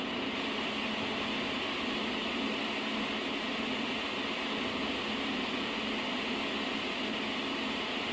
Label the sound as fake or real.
real